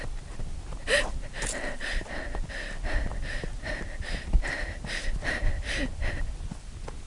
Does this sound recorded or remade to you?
recorded